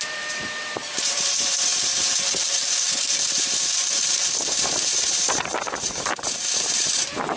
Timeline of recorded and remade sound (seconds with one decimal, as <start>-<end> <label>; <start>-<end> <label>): 0.0-7.4 remade

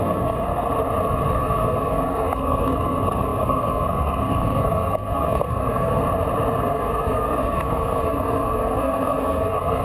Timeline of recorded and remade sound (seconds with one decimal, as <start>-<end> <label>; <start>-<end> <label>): 0.0-0.7 remade; 0.7-1.3 recorded; 1.3-6.0 remade; 6.0-6.6 recorded; 6.6-9.8 remade

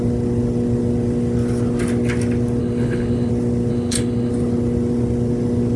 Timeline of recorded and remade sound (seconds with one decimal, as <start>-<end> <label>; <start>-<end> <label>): 0.0-2.6 recorded; 2.6-3.3 remade; 3.3-3.7 recorded; 3.7-4.3 remade; 4.3-5.8 recorded

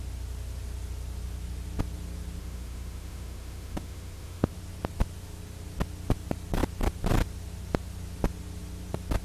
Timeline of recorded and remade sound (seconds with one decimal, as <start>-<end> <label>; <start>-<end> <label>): 0.0-2.4 recorded; 2.4-4.5 remade; 4.5-9.2 recorded

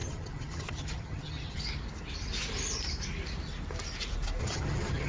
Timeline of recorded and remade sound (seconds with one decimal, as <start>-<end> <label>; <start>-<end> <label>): 0.0-1.6 remade; 1.6-4.4 recorded; 4.4-5.1 remade

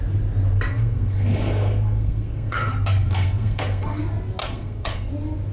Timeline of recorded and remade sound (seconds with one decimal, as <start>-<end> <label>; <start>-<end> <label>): 0.0-0.7 recorded; 0.7-4.0 remade; 4.0-4.4 recorded; 4.4-5.1 remade; 5.1-5.5 recorded